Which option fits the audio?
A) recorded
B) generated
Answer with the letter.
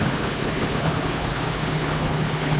B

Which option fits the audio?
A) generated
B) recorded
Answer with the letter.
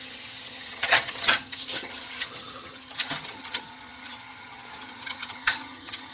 A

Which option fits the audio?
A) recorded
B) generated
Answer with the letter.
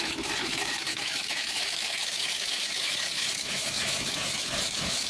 B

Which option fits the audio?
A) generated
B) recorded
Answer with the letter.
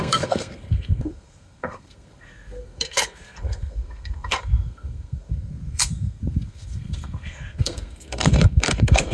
A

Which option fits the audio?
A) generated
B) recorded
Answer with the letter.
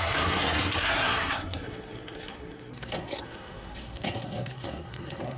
A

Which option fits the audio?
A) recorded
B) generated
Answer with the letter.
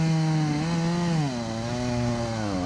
A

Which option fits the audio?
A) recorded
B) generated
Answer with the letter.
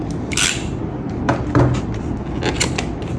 A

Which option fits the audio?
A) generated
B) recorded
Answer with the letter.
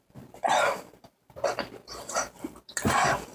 A